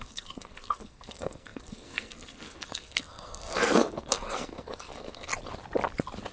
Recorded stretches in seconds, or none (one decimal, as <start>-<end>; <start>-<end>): 5.3-6.3